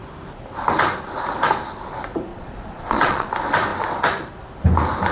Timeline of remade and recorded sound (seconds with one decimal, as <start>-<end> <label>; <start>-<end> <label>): 0.0-2.3 recorded; 2.3-3.3 remade; 3.3-5.1 recorded

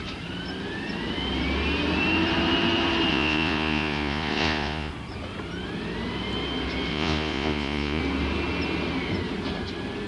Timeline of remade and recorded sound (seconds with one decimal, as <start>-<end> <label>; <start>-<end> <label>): 0.0-3.1 recorded; 3.1-4.9 remade; 4.9-6.9 recorded; 6.9-8.0 remade; 8.0-10.1 recorded

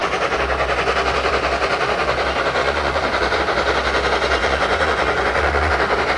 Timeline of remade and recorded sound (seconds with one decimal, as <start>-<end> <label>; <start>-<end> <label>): 0.0-2.6 recorded; 2.6-3.4 remade; 3.4-4.4 recorded; 4.4-5.7 remade; 5.7-6.2 recorded

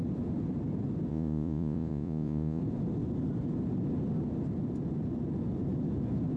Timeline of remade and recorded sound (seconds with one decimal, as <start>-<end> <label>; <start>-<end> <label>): 0.0-1.1 recorded; 1.1-2.6 remade; 2.6-6.4 recorded

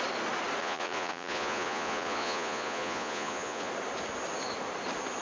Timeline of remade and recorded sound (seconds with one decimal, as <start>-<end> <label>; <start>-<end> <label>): 0.0-0.6 recorded; 0.6-3.7 remade; 3.7-5.2 recorded

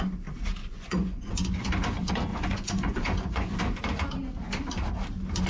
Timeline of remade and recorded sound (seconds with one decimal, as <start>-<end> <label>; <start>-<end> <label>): 0.0-0.6 recorded; 0.6-1.3 remade; 1.3-2.3 recorded; 2.3-3.6 remade; 3.6-5.5 recorded

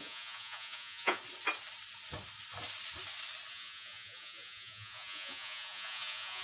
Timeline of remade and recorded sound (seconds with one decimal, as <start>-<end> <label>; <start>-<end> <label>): 0.0-1.2 remade; 1.2-3.5 recorded; 3.5-6.4 remade